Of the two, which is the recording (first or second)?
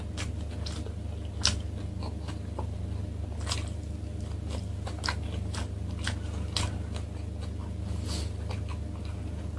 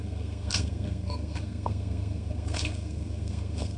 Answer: first